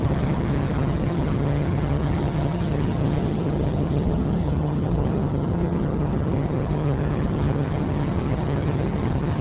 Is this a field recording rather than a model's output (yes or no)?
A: no